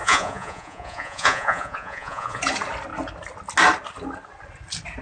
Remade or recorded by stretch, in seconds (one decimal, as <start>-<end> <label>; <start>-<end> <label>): 0.0-2.4 remade; 2.4-5.0 recorded